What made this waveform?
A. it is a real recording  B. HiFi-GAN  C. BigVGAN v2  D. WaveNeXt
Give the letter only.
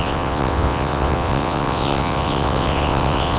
D